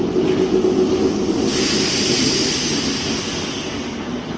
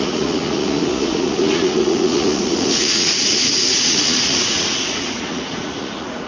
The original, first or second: first